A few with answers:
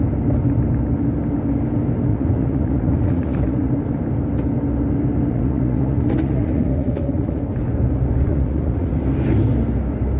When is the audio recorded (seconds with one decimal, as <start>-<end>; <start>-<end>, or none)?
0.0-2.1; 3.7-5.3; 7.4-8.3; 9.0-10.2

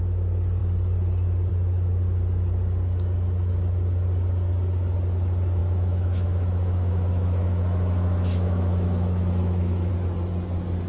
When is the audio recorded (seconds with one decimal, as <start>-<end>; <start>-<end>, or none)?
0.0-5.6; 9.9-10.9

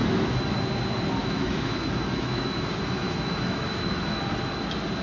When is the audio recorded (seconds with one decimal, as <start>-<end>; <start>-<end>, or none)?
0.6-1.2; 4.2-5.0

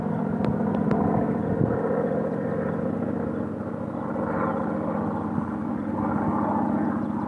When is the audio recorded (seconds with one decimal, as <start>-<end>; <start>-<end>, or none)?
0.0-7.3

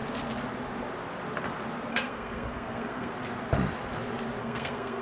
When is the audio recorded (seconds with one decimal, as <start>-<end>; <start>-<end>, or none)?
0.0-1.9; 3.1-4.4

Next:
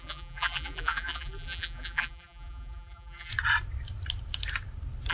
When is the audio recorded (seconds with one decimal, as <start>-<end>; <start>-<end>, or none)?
3.3-5.1

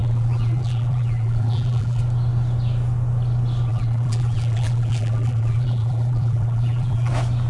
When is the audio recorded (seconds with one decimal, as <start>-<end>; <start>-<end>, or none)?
2.0-3.7; 7.1-7.5